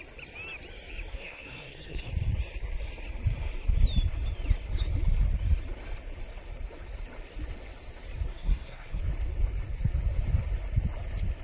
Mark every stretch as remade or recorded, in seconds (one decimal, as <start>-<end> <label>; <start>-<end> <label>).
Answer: 0.0-1.1 recorded; 1.1-2.1 remade; 2.1-8.3 recorded; 8.3-9.0 remade; 9.0-11.4 recorded